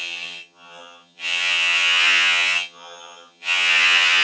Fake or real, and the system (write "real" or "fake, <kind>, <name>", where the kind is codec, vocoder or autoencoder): fake, vocoder, HiFi-GAN